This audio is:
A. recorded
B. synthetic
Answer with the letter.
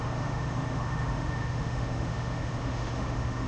B